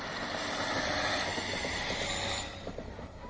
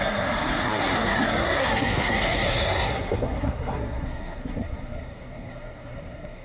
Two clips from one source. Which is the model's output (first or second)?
second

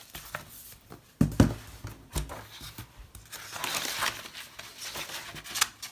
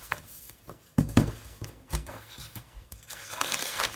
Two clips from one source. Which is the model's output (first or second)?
second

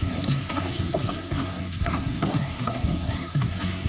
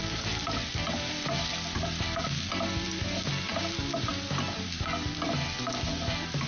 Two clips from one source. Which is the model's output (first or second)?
first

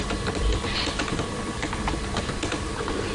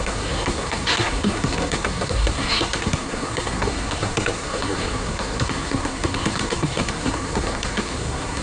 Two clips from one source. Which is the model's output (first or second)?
second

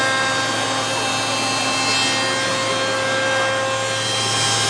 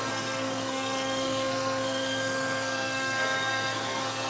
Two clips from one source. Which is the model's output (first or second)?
second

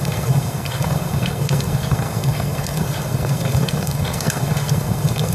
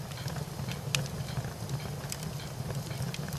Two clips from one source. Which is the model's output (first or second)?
first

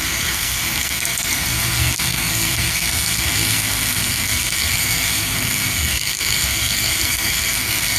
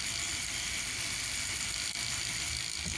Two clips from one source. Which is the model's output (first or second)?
first